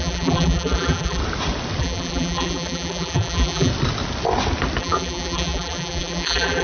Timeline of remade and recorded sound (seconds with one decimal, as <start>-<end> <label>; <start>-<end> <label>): 0.0-1.2 remade; 1.2-1.8 recorded; 1.8-3.7 remade; 3.7-4.8 recorded; 4.8-6.6 remade